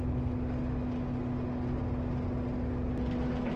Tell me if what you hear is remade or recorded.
recorded